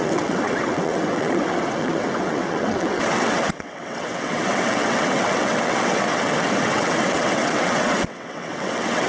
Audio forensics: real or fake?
fake